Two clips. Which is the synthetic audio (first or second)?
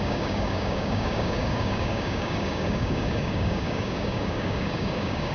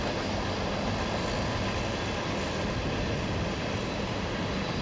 first